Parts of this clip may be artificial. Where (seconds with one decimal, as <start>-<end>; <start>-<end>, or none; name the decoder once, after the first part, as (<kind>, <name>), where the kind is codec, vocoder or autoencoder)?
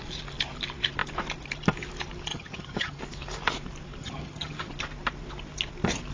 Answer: 2.3-3.0 (vocoder, HiFi-GAN); 4.0-4.7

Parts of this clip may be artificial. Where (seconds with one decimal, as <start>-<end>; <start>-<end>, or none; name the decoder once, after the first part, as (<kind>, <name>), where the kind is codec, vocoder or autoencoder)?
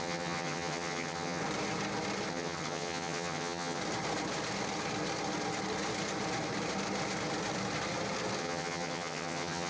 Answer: 0.0-1.4 (vocoder, HiFi-GAN); 2.3-3.8; 8.4-9.7